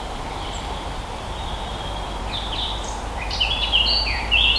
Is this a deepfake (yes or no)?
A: yes